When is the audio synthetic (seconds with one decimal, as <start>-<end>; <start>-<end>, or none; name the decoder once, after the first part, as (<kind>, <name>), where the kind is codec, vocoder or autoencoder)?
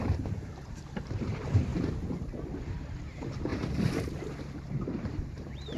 0.0-1.7 (vocoder, BigVGAN v2); 2.6-3.5; 4.8-5.8